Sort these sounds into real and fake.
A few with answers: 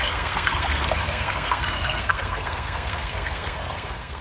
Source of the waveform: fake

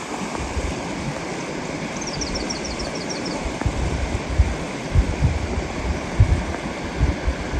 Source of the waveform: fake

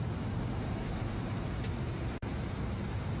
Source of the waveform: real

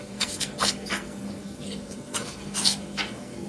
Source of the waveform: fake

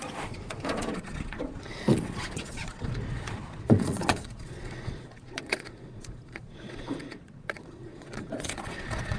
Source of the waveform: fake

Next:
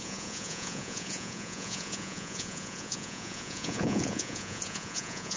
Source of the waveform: fake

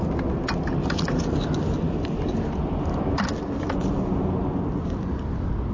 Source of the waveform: real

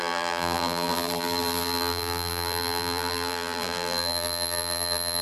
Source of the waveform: fake